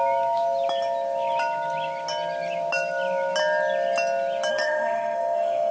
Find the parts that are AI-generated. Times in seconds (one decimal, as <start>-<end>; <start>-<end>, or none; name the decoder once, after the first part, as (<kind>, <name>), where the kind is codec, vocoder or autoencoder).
4.5-5.7 (codec, SNAC)